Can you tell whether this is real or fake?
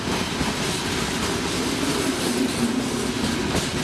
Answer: real